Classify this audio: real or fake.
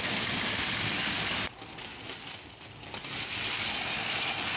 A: real